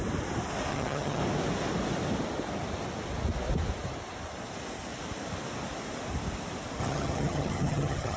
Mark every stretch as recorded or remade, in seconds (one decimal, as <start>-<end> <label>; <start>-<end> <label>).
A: 0.0-0.7 recorded; 0.7-1.2 remade; 1.2-6.8 recorded; 6.8-8.2 remade